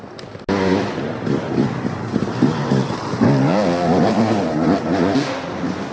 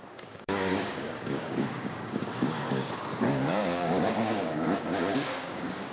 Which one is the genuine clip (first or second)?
first